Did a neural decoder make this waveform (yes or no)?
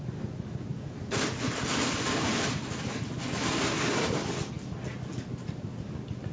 no